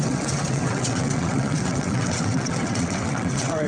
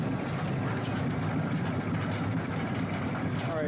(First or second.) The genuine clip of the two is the second